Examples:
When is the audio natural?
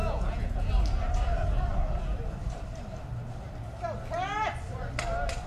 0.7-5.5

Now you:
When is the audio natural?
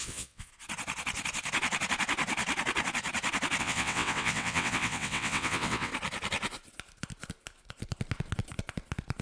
0.5-3.6; 5.9-9.2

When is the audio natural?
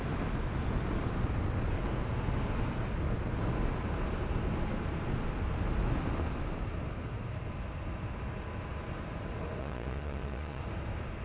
0.0-9.6; 10.6-11.2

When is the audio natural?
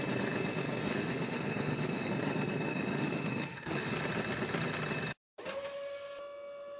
0.0-0.8; 2.1-2.7; 3.9-6.8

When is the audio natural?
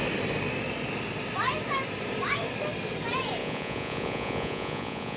0.0-3.4